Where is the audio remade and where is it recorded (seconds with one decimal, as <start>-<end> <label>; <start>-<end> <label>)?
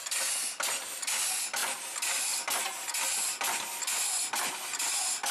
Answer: 0.0-5.3 recorded